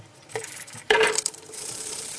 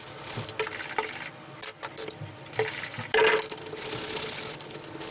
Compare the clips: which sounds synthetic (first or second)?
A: first